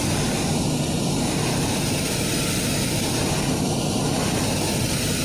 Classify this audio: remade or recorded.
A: recorded